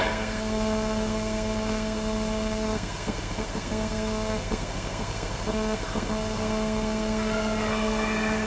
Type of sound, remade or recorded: remade